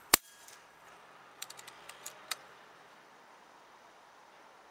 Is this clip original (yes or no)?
no